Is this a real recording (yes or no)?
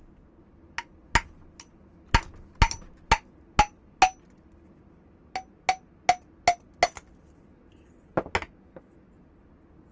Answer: yes